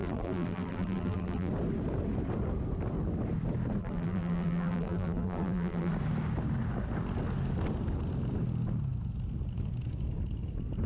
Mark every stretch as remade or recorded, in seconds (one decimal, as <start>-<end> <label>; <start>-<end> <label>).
0.0-1.5 remade; 1.5-3.8 recorded; 3.8-5.9 remade; 5.9-10.9 recorded

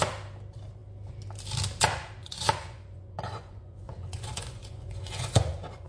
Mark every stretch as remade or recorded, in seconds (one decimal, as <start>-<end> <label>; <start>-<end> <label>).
0.0-2.2 recorded; 2.2-5.9 remade

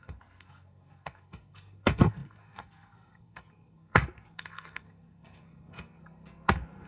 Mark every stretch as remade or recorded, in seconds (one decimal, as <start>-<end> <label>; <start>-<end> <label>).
0.0-6.9 remade

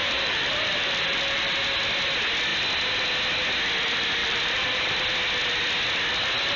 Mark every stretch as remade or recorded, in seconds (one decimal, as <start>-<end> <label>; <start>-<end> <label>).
0.0-1.5 remade; 1.5-4.2 recorded; 4.2-5.0 remade; 5.0-6.6 recorded

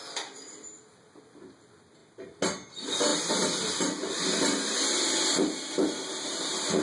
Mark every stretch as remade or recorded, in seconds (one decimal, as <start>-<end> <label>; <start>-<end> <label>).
0.0-6.8 recorded

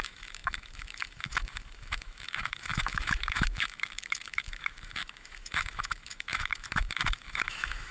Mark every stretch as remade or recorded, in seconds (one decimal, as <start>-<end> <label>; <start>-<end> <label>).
0.0-7.9 remade

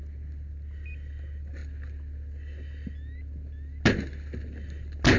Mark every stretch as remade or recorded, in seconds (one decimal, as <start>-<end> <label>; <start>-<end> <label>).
0.0-5.2 recorded

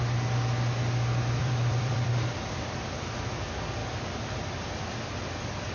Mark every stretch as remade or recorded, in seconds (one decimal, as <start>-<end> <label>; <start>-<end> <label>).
0.0-1.4 recorded; 1.4-2.1 remade; 2.1-3.8 recorded; 3.8-5.7 remade